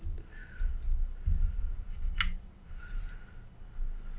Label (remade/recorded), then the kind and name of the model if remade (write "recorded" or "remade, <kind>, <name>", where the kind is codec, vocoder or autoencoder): recorded